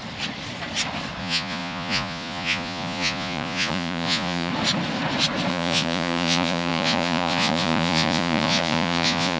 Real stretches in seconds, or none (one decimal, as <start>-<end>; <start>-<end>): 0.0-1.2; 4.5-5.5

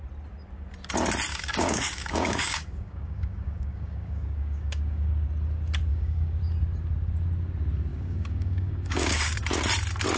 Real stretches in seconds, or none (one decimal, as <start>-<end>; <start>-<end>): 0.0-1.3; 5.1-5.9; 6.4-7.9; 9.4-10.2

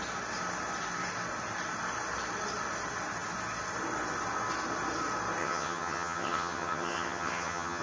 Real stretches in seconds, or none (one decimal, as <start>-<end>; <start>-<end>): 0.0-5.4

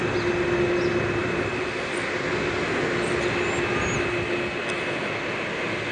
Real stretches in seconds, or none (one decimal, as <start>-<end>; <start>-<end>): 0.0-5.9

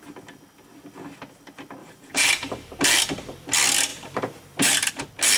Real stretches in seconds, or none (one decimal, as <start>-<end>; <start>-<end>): 0.0-1.8; 2.5-3.9; 4.9-5.4

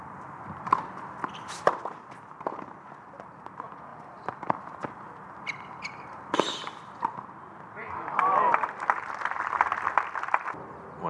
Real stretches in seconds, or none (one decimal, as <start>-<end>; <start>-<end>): 0.0-11.1